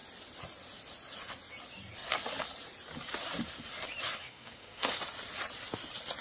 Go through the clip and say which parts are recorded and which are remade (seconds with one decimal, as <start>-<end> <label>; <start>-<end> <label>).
0.0-4.2 recorded; 4.2-5.0 remade; 5.0-6.2 recorded